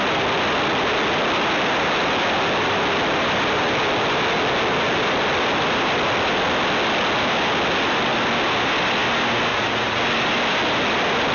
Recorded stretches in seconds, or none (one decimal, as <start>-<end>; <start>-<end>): 0.0-9.5; 10.0-11.3